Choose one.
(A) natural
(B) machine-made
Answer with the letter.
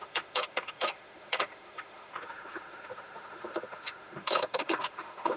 B